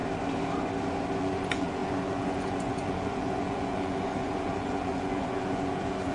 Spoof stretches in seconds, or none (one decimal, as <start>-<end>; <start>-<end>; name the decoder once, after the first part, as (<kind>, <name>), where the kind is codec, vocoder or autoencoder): 1.2-6.1 (vocoder, Vocos)